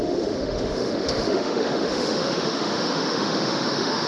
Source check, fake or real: fake